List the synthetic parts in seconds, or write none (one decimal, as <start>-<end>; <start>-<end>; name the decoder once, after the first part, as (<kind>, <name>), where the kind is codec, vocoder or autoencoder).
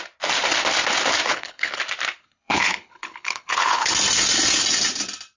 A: 1.3-1.8 (codec, HILCodec); 2.2-3.9